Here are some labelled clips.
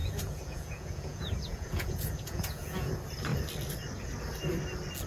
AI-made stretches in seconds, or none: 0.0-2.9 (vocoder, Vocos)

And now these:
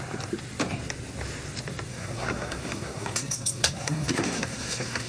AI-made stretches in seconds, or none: 1.9-5.1 (codec, SNAC)